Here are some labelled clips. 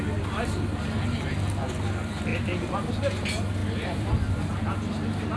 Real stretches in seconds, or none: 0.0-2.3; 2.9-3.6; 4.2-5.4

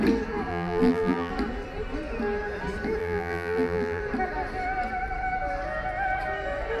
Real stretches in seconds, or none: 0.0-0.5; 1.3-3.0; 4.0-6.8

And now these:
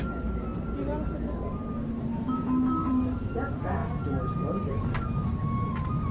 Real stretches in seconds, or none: 0.0-6.1

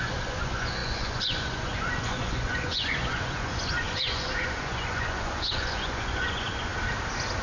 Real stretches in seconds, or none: 6.7-7.4